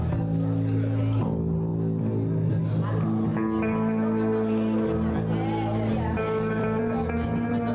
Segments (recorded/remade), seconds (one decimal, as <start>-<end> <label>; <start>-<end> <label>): 0.0-7.7 recorded